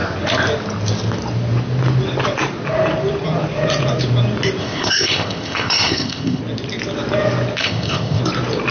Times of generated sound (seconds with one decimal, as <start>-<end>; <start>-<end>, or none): 4.6-6.4; 7.6-8.2